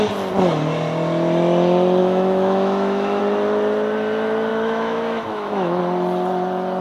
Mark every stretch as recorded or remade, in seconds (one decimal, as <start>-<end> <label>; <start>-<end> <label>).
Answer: 0.0-2.0 recorded; 2.0-3.2 remade; 3.2-4.5 recorded; 4.5-5.8 remade; 5.8-6.8 recorded